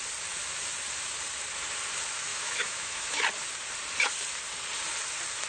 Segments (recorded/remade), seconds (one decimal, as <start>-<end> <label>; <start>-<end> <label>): 0.0-2.3 recorded; 2.3-3.2 remade; 3.2-5.5 recorded